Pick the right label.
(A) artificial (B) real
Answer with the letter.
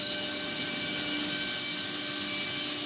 B